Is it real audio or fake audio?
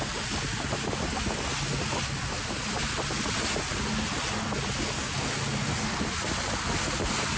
real